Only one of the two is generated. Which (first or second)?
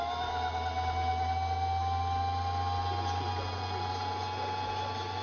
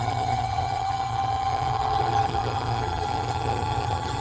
second